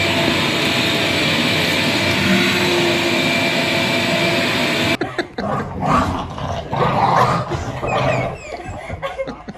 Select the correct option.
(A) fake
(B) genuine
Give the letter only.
B